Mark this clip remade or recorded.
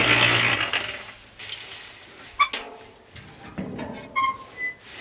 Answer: recorded